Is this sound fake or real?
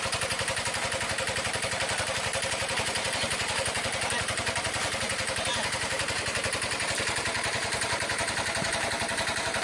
fake